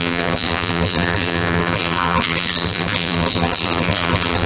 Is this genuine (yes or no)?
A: no